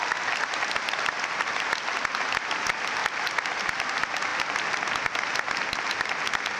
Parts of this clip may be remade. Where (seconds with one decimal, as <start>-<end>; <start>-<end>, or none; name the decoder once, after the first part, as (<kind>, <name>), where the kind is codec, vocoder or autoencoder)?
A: none